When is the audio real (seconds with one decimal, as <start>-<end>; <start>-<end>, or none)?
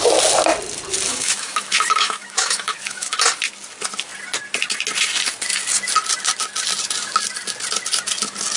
0.0-1.1; 3.2-8.6